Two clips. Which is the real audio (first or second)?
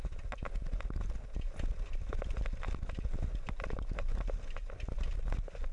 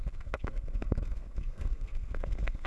first